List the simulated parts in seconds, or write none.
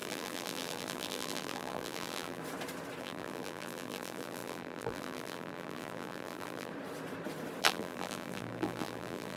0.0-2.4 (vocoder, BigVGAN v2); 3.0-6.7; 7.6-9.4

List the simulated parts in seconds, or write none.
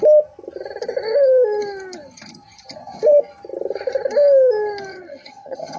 4.9-5.8 (vocoder, HiFi-GAN)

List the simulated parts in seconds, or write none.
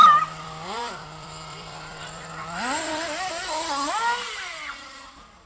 0.0-3.3 (vocoder, BigVGAN v2)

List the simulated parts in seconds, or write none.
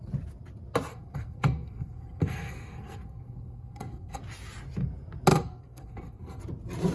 0.9-4.2 (codec, SNAC); 5.3-6.4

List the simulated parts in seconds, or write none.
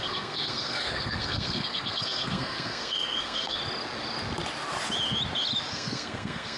0.0-3.6 (codec, SNAC); 5.7-6.6